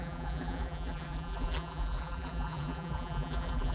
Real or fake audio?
fake